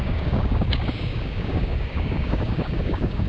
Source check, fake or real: fake